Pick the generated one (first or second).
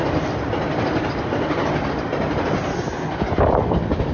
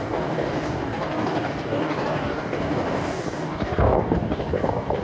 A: second